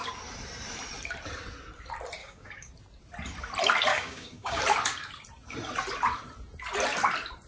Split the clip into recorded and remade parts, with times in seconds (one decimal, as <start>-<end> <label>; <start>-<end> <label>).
0.0-2.2 recorded; 2.2-2.7 remade; 2.7-3.9 recorded; 3.9-4.6 remade; 4.6-7.5 recorded